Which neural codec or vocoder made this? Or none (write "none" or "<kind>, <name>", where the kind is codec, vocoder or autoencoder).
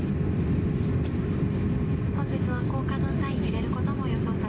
none